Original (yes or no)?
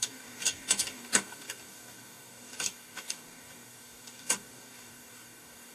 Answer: no